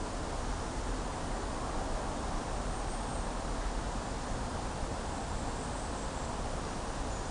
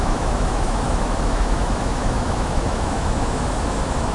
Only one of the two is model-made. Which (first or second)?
second